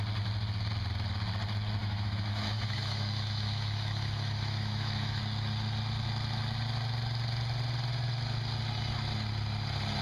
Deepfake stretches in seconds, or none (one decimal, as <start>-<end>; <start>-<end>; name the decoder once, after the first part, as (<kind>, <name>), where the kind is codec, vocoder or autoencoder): 1.8-5.2 (autoencoder, DAC-VAE)